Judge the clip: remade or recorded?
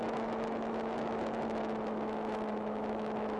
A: remade